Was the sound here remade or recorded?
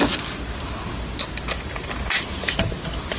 recorded